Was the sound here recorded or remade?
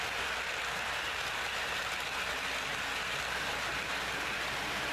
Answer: recorded